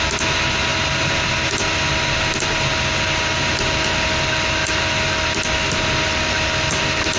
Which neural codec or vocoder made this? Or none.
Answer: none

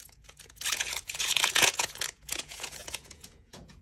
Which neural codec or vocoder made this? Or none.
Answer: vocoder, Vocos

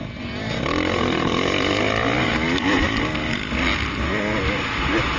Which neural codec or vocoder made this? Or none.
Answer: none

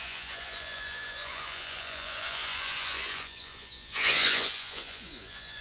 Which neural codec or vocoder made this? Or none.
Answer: vocoder, Vocos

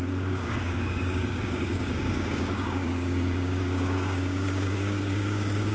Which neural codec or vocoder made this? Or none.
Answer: codec, DAC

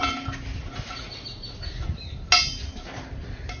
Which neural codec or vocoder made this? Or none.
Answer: none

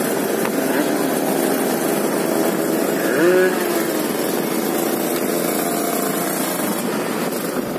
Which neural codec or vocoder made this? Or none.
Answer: none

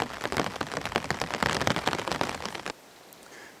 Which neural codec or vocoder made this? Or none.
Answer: none